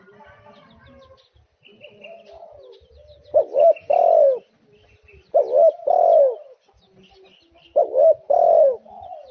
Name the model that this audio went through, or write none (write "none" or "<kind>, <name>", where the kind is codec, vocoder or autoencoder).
none